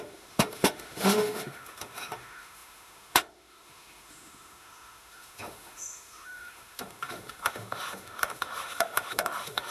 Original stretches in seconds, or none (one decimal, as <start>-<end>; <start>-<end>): none